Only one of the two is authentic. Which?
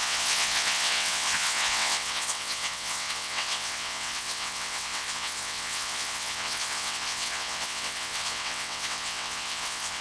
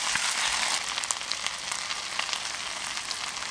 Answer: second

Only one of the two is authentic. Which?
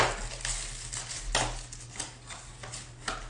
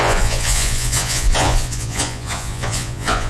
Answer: first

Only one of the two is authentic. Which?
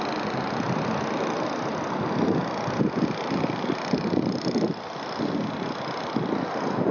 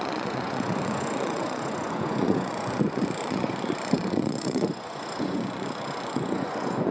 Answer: first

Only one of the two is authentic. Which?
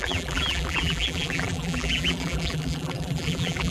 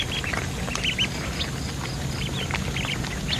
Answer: second